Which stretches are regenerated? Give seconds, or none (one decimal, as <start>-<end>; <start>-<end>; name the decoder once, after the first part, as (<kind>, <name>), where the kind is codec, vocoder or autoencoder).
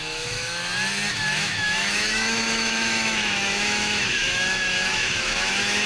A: 0.0-0.6 (autoencoder, DAC-VAE); 1.1-5.9